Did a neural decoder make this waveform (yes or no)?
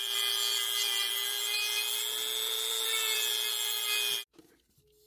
no